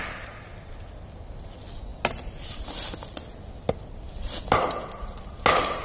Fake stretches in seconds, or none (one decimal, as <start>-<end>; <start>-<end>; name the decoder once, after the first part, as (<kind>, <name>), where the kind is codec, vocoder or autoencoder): none